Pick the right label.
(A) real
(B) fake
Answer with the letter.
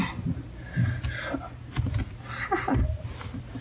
A